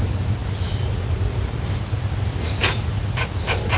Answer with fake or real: real